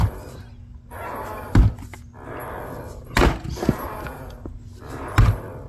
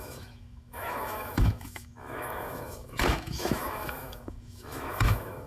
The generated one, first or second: second